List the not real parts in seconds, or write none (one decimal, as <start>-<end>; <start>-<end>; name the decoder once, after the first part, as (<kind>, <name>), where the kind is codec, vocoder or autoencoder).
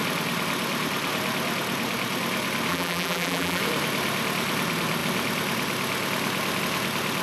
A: 2.7-3.6 (vocoder, BigVGAN v2)